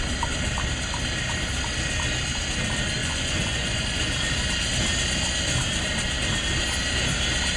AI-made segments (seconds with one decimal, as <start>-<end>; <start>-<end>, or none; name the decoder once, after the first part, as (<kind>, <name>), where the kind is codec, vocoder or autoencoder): 3.0-4.0 (vocoder, Vocos)